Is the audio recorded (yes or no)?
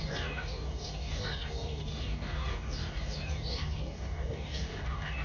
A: no